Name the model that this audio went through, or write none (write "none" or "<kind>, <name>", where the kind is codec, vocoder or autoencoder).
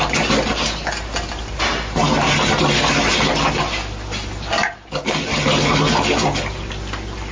none